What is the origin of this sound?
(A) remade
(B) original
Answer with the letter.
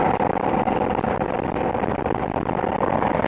B